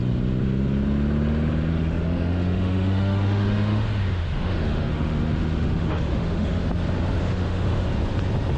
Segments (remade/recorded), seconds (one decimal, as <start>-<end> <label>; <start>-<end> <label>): 0.0-1.7 recorded; 1.7-6.7 remade; 6.7-7.2 recorded; 7.2-7.9 remade; 7.9-8.6 recorded